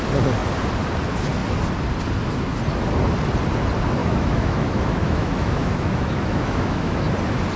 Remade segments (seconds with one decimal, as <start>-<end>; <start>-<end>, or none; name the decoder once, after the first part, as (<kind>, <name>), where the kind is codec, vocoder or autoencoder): 4.0-7.1 (autoencoder, DAC-VAE)